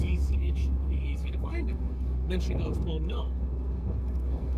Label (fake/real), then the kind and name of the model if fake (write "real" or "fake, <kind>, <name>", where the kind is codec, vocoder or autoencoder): fake, codec, SNAC